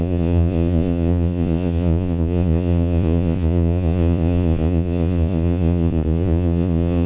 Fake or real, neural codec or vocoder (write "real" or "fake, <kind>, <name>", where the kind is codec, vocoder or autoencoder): fake, vocoder, Vocos